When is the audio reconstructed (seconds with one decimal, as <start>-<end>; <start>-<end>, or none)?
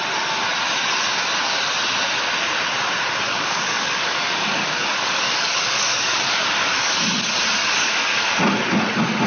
3.3-6.9; 7.6-8.3